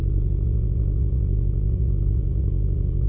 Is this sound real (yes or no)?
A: no